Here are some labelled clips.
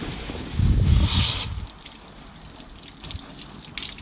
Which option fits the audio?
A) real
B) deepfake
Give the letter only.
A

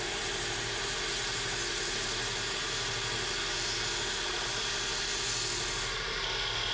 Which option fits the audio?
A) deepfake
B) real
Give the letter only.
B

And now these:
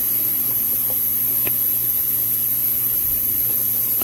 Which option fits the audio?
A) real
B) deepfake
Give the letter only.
A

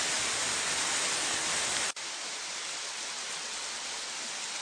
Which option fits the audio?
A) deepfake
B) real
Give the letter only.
B